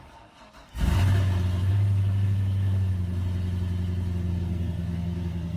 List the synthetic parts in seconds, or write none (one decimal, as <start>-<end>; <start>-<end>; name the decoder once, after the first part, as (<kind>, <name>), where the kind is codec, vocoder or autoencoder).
0.0-0.9 (codec, SNAC); 1.7-2.9; 4.3-5.6